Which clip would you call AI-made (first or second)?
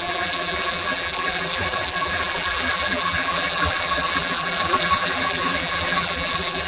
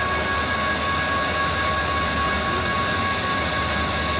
first